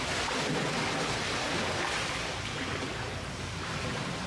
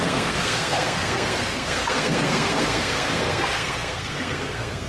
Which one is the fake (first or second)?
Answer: second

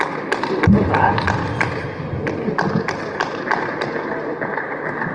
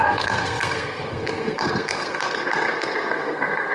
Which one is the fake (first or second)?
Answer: second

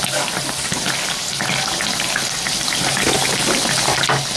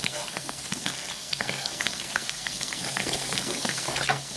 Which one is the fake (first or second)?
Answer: second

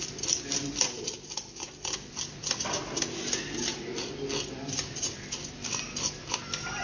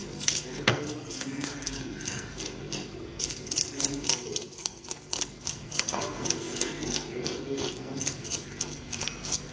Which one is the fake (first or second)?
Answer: second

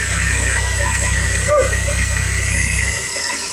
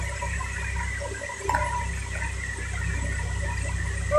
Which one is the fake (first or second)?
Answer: first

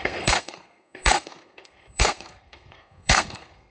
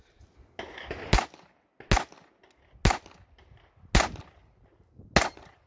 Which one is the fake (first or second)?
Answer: first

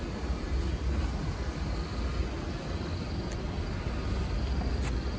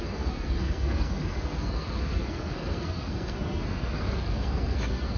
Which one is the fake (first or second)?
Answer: second